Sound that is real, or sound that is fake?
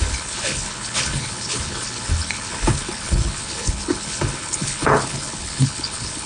fake